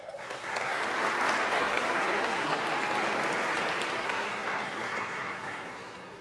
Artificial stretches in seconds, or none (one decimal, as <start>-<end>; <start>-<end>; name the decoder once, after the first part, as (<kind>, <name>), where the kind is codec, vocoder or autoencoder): 0.0-0.8 (codec, SNAC); 1.6-2.6; 3.9-6.2